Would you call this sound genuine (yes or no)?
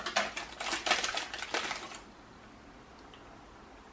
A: yes